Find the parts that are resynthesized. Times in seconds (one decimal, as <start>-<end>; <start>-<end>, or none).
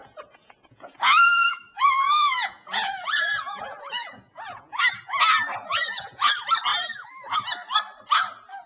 0.0-4.8; 5.7-6.3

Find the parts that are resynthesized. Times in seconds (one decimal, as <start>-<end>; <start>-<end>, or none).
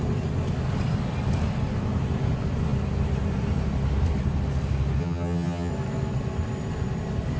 5.0-5.7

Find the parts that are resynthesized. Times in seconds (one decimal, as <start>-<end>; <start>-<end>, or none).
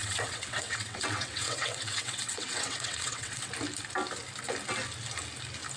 0.0-3.5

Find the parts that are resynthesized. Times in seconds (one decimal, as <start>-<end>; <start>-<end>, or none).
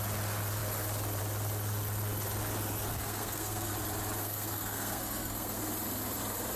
2.9-3.7; 4.2-5.6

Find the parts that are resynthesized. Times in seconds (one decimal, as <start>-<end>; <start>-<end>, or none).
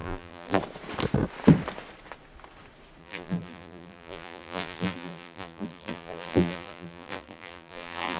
0.0-0.6; 3.0-8.2